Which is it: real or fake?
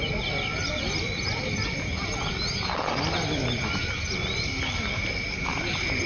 real